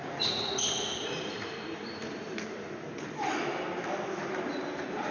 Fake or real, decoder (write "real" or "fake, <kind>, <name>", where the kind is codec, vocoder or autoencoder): real